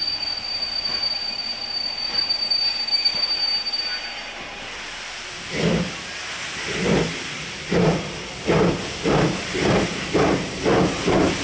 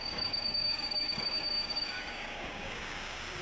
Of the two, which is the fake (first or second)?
second